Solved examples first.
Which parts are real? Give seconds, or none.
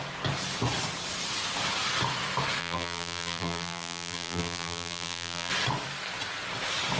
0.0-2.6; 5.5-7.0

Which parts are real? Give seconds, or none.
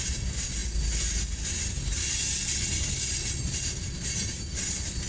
0.0-5.1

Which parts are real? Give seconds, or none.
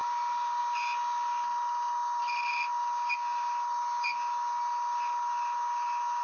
0.6-6.2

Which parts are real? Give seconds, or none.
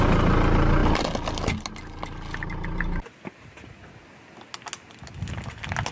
0.0-5.9